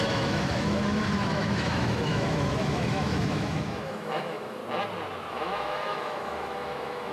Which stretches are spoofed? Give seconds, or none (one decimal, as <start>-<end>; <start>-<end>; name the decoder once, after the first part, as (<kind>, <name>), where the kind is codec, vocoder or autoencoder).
0.0-4.6 (autoencoder, DAC-VAE); 5.3-7.1